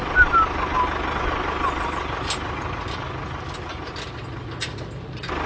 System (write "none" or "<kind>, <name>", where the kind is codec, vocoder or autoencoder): none